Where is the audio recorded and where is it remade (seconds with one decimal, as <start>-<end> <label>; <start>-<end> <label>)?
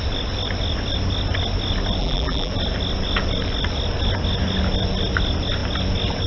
0.0-2.0 recorded; 2.0-2.5 remade; 2.5-6.3 recorded